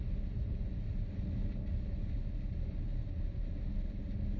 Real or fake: real